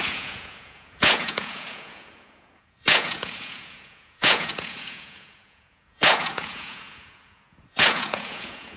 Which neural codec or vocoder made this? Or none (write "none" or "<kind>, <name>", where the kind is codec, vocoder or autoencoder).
vocoder, Vocos